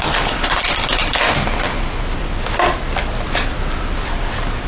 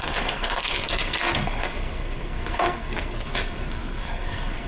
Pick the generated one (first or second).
second